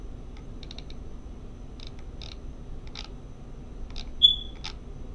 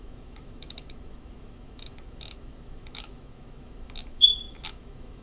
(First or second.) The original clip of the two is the first